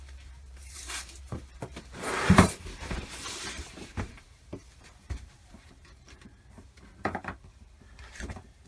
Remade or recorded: remade